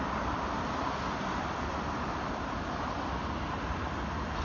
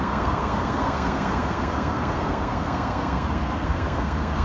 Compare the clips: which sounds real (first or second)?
first